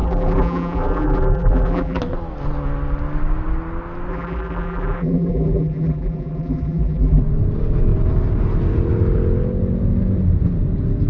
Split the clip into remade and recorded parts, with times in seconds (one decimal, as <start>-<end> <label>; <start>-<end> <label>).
0.0-2.0 remade; 2.0-4.1 recorded; 4.1-7.2 remade; 7.2-11.1 recorded